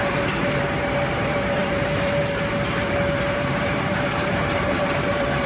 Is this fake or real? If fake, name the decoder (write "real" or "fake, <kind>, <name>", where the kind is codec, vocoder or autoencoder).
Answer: fake, vocoder, BigVGAN v2